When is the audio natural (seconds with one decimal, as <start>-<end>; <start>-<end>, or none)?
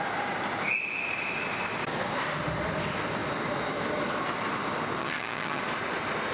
0.0-5.0; 5.6-6.3